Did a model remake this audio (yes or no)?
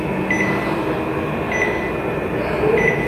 no